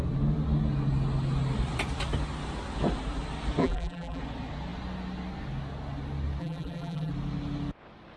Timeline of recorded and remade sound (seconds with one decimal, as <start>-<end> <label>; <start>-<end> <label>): 0.0-3.6 recorded; 3.6-4.2 remade; 4.2-6.4 recorded; 6.4-7.1 remade; 7.1-8.2 recorded